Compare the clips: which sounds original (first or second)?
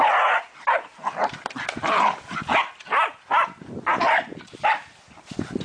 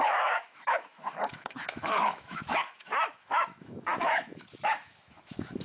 first